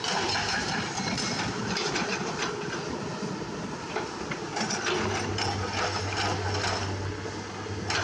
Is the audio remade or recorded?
recorded